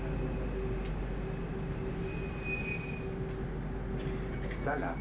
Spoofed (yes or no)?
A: no